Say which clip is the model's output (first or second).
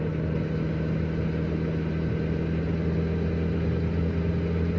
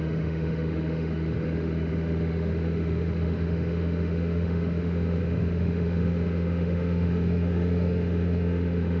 second